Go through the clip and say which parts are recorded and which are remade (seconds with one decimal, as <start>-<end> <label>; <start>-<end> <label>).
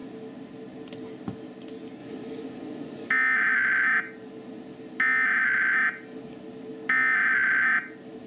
0.0-2.0 recorded; 2.0-3.1 remade; 3.1-8.3 recorded